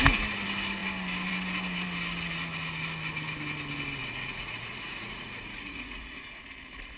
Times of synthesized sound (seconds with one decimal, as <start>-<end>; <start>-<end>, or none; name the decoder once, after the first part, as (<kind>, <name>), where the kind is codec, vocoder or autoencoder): 4.0-6.4 (vocoder, Vocos)